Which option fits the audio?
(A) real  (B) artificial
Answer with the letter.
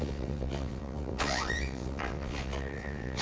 B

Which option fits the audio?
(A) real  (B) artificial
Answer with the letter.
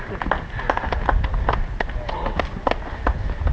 A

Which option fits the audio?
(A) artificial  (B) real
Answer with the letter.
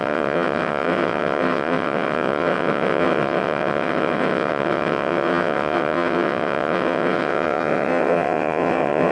A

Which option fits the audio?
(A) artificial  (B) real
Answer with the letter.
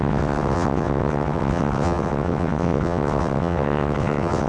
A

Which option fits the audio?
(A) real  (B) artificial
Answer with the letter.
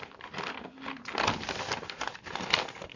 A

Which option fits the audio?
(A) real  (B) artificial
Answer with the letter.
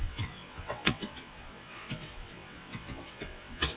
B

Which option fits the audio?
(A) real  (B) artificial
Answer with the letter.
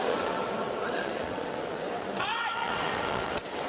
B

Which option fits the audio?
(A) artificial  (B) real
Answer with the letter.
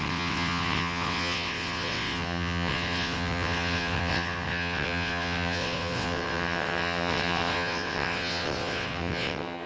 A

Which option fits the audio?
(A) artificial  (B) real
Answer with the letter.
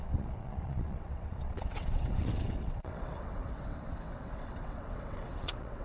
A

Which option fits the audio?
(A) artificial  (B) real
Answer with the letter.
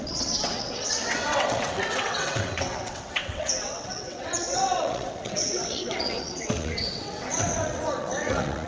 A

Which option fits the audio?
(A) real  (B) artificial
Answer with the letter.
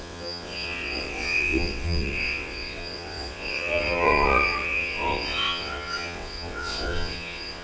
B